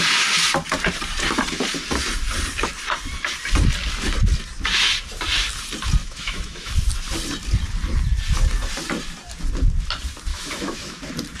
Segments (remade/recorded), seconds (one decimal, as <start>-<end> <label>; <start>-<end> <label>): 0.0-6.0 recorded; 6.0-6.7 remade; 6.7-10.3 recorded; 10.3-11.0 remade; 11.0-11.4 recorded